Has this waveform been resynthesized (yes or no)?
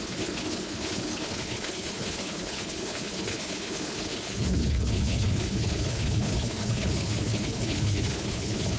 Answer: yes